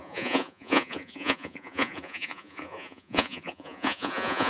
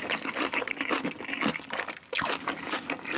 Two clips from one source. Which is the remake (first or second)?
first